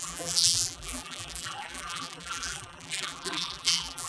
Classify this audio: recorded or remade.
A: remade